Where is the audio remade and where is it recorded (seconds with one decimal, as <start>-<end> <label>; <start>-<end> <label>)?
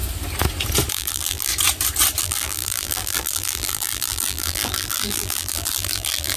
0.0-0.9 recorded; 0.9-1.5 remade; 1.5-2.2 recorded; 2.2-6.4 remade